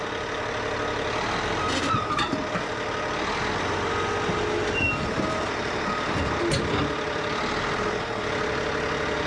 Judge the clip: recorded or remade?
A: recorded